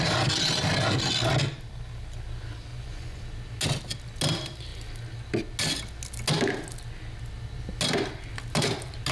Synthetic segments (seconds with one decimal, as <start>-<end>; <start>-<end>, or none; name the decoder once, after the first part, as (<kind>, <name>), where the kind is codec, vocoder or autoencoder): 2.7-3.2 (vocoder, Vocos)

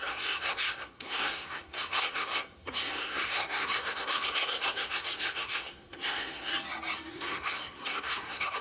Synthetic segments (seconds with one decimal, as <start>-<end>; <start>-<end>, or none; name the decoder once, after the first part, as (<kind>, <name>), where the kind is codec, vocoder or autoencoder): 0.0-6.5 (codec, SNAC); 7.1-8.6